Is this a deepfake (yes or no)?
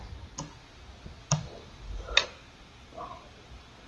no